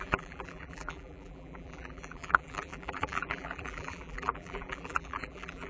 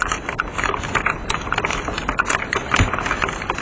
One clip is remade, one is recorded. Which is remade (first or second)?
first